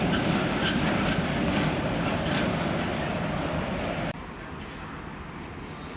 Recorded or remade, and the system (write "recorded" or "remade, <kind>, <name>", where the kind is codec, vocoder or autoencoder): recorded